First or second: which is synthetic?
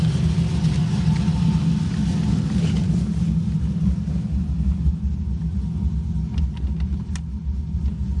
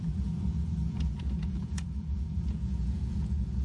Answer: second